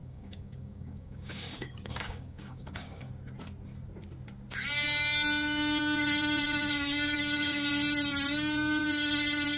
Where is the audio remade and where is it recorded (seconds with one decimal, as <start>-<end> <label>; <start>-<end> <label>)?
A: 0.0-3.1 remade; 3.1-6.4 recorded; 6.4-7.7 remade; 7.7-9.6 recorded